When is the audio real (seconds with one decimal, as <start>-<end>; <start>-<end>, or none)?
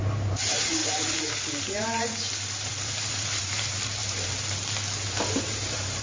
2.1-2.7